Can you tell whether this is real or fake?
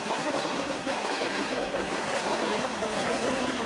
fake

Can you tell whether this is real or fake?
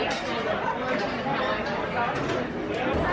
real